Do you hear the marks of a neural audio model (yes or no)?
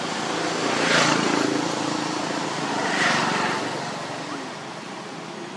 no